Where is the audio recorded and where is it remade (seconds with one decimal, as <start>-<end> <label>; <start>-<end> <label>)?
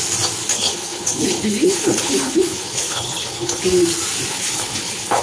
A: 0.0-0.5 recorded; 0.5-3.6 remade; 3.6-4.3 recorded; 4.3-5.2 remade